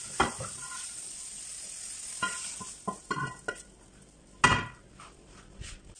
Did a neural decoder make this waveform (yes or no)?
no